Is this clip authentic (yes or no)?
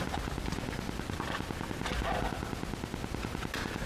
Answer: yes